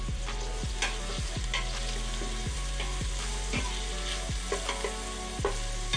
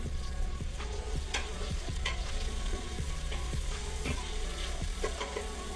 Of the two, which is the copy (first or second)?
second